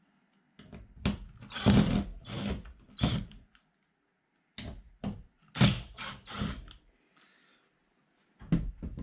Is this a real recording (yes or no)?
yes